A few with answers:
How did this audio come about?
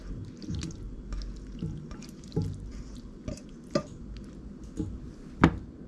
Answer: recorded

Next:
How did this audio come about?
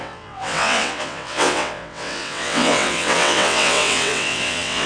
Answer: remade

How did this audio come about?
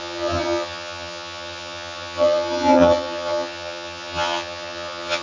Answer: remade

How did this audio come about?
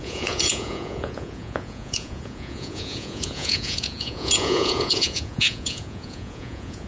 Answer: remade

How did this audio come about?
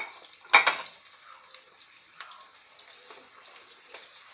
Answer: recorded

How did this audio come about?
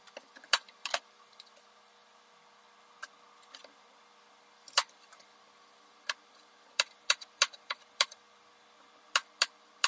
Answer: remade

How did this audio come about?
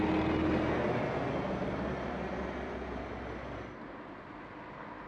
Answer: recorded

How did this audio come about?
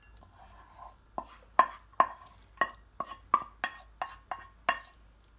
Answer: recorded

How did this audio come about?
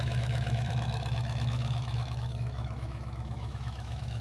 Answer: remade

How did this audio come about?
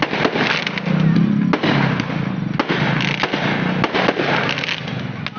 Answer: recorded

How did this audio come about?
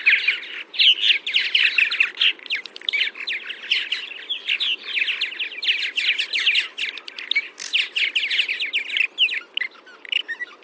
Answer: recorded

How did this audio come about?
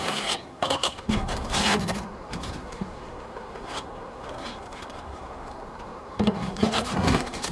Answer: remade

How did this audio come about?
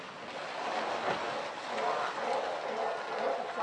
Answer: recorded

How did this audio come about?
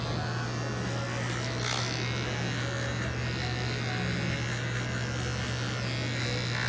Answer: recorded